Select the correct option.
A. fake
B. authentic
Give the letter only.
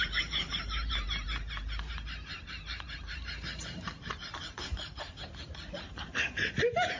A